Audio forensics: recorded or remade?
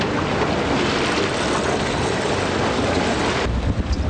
recorded